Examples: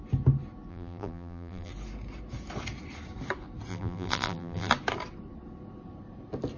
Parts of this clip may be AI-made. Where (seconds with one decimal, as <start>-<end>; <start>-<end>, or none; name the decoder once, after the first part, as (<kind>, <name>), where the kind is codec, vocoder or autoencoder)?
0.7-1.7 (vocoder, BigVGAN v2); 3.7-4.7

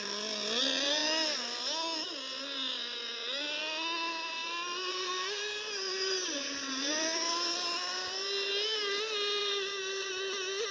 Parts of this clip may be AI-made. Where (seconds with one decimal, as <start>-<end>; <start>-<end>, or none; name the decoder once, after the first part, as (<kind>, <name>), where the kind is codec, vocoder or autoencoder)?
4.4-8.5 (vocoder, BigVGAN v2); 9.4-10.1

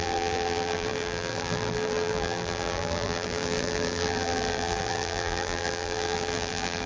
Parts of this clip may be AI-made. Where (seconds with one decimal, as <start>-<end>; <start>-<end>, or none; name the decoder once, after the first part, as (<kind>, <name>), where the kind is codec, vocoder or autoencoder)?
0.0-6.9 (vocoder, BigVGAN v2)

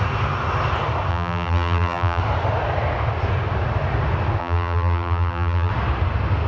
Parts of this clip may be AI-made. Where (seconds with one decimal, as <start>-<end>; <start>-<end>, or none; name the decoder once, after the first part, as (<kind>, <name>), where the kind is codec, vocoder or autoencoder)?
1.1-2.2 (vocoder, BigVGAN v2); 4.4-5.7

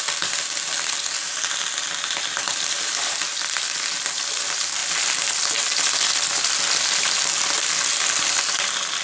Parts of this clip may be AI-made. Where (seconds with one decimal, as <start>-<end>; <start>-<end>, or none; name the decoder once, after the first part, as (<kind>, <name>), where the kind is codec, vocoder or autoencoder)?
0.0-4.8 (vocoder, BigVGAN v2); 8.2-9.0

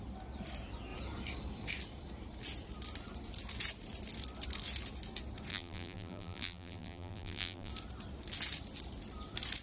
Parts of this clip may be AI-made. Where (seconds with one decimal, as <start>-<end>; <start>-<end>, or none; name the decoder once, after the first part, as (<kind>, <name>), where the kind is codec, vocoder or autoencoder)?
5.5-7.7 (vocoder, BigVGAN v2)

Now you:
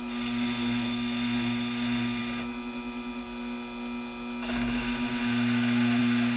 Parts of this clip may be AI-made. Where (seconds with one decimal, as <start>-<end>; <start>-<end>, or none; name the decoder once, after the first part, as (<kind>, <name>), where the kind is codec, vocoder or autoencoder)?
none